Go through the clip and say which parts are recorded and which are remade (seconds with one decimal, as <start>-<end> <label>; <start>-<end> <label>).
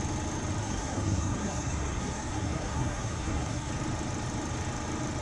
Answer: 0.0-0.6 recorded; 0.6-3.7 remade; 3.7-5.2 recorded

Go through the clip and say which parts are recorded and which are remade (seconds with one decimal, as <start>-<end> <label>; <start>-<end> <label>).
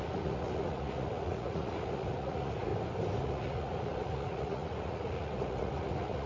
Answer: 0.0-2.7 remade; 2.7-3.2 recorded; 3.2-6.3 remade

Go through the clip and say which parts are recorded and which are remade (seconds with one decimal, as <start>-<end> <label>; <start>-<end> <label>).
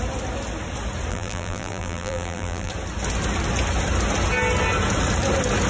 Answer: 0.0-1.1 recorded; 1.1-2.7 remade; 2.7-5.7 recorded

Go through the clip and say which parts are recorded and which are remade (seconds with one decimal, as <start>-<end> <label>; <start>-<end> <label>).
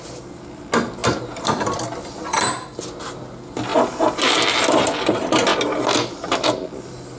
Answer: 0.0-7.2 recorded